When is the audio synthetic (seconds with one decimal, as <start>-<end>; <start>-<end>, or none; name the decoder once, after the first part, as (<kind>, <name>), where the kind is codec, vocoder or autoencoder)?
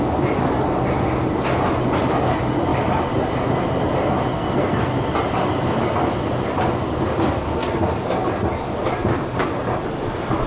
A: 4.3-4.9 (codec, SNAC)